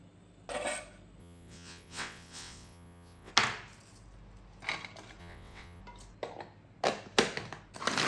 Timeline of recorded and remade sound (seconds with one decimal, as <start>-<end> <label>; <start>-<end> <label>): 0.0-1.2 recorded; 1.2-3.3 remade; 3.3-5.2 recorded; 5.2-5.8 remade; 5.8-8.1 recorded